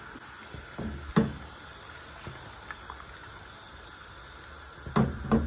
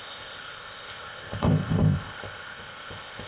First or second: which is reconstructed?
second